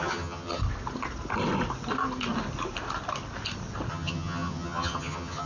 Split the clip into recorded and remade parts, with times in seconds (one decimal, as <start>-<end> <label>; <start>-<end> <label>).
0.0-0.6 remade; 0.6-3.9 recorded; 3.9-5.5 remade